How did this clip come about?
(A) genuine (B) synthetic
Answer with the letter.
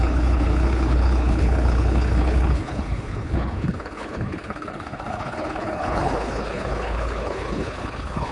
B